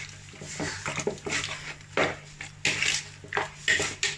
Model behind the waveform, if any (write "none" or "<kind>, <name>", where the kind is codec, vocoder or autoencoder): none